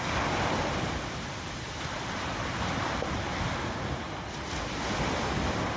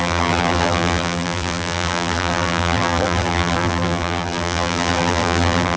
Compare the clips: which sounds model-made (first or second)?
second